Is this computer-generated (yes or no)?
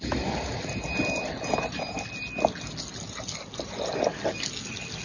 no